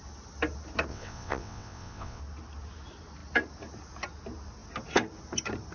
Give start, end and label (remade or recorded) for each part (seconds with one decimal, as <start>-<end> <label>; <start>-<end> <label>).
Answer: 0.0-0.9 recorded; 0.9-2.2 remade; 2.2-5.7 recorded